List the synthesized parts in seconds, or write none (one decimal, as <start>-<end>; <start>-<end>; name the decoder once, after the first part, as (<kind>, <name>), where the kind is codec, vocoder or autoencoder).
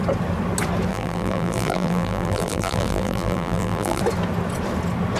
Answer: 0.9-4.0 (vocoder, BigVGAN v2)